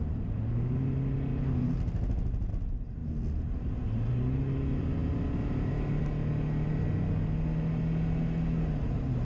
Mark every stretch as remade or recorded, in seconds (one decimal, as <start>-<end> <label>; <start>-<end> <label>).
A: 0.0-9.2 recorded